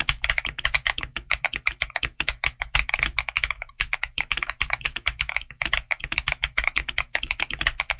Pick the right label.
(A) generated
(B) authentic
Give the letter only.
A